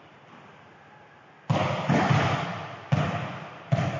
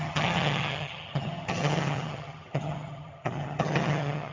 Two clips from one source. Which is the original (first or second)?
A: first